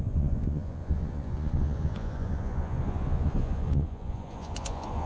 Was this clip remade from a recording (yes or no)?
yes